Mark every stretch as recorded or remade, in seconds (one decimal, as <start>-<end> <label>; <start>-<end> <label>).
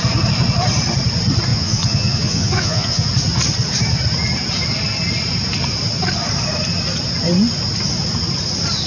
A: 0.0-1.5 recorded; 1.5-3.1 remade; 3.1-8.9 recorded